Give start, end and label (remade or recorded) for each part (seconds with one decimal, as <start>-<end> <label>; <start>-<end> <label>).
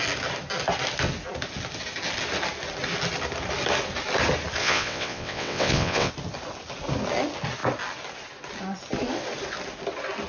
0.0-4.6 recorded; 4.6-6.1 remade; 6.1-10.3 recorded